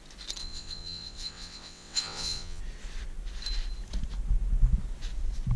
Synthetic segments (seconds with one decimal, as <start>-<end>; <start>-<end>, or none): 0.4-2.6